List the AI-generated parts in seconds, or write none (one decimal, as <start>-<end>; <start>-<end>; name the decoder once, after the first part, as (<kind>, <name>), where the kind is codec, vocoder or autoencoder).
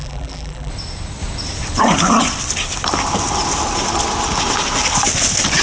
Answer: 0.0-0.7 (vocoder, BigVGAN v2)